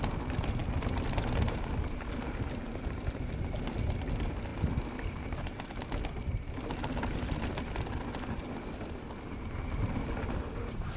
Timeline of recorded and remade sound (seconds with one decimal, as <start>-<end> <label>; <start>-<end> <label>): 0.0-11.0 recorded